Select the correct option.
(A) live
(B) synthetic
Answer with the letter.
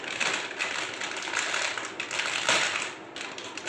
A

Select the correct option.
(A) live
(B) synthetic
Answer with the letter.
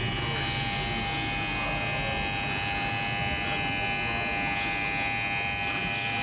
A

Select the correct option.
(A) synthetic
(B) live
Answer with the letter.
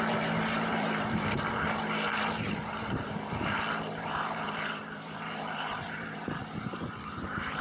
A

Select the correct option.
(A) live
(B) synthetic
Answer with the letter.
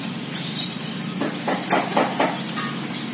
A